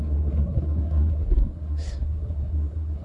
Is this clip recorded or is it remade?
remade